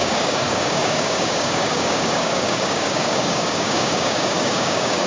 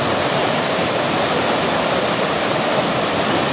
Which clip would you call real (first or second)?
second